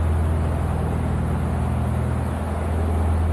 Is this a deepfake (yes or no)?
no